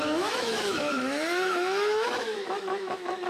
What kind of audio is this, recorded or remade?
remade